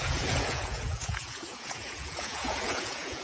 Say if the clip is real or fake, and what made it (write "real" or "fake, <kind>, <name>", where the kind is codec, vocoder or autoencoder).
fake, vocoder, Vocos